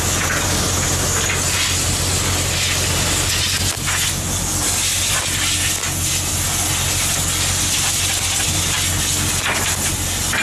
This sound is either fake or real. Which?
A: real